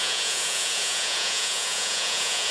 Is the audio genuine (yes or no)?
no